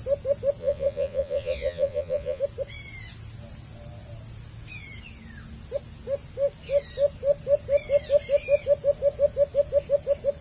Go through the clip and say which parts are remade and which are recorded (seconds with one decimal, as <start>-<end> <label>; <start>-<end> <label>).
0.0-0.6 recorded; 0.6-2.4 remade; 2.4-10.4 recorded